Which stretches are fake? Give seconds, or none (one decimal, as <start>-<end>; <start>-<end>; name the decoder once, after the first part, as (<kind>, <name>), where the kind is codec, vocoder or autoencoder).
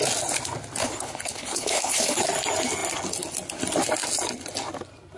0.8-2.2 (codec, HILCodec)